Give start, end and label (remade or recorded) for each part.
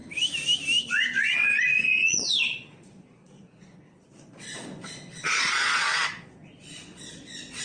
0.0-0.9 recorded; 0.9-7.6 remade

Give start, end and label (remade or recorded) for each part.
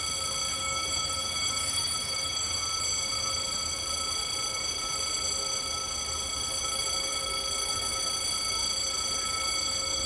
0.0-0.5 recorded; 0.5-2.6 remade; 2.6-10.1 recorded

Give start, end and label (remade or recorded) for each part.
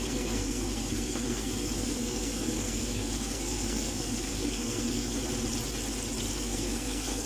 0.0-5.2 remade; 5.2-6.3 recorded; 6.3-7.3 remade